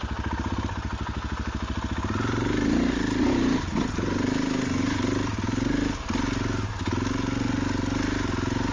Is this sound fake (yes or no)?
no